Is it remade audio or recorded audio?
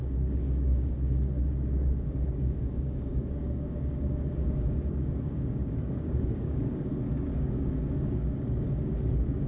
remade